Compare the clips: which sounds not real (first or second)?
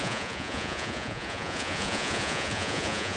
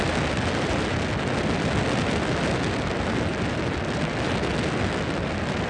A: first